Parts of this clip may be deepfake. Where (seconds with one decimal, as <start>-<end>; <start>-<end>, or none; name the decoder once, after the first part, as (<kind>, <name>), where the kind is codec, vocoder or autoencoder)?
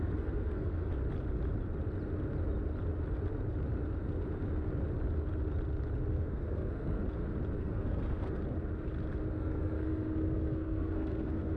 0.0-1.0 (codec, SNAC); 6.1-7.0; 7.6-8.4; 9.4-11.6